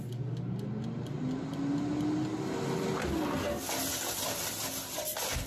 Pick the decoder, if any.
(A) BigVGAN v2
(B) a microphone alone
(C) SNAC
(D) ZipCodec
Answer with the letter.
B